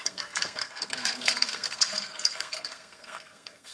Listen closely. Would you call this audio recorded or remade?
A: remade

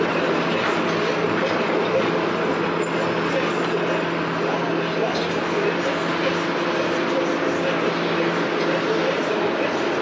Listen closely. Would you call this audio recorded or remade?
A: recorded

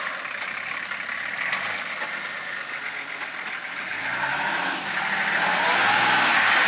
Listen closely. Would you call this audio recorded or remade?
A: recorded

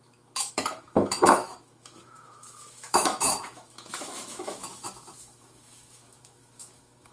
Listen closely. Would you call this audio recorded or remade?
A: remade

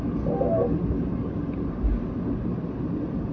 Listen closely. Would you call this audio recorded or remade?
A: recorded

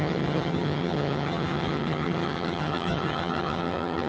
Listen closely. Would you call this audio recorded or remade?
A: remade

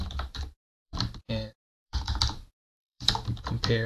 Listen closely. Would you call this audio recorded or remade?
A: remade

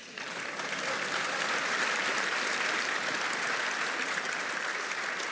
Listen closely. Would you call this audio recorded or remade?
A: recorded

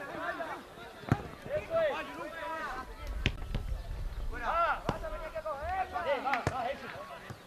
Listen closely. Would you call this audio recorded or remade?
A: recorded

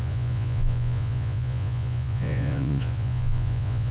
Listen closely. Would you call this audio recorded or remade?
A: remade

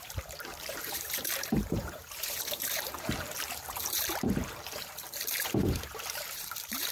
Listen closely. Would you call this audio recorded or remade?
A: remade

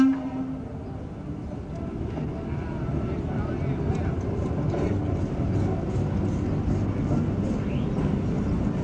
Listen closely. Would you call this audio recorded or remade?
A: recorded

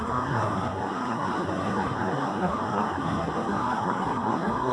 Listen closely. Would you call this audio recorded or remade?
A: remade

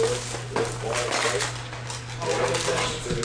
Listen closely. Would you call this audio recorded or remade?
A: recorded